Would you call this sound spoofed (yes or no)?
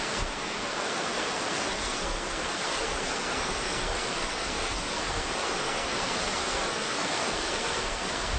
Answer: yes